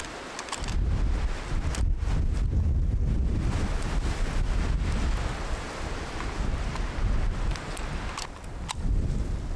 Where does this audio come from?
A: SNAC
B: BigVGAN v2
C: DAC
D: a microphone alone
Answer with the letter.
D